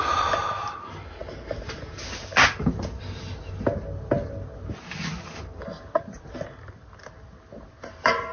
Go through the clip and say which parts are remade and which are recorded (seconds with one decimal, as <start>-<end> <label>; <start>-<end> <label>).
0.0-8.3 recorded